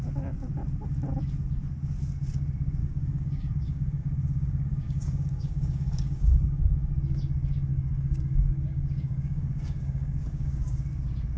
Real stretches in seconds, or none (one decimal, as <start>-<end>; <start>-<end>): 0.0-2.8; 6.9-7.7; 10.8-11.4